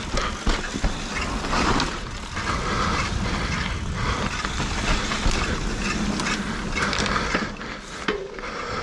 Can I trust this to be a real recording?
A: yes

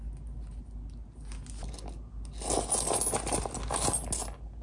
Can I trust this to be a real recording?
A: yes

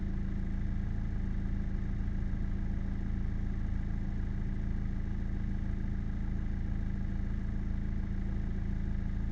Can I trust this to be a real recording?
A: yes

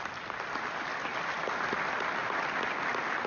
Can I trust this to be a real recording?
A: yes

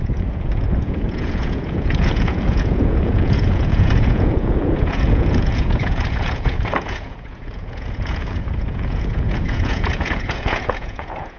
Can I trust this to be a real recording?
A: no